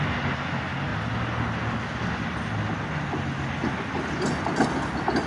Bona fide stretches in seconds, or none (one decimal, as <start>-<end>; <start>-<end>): 0.0-5.3